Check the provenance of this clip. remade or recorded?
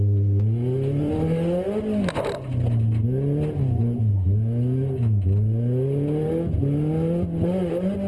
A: recorded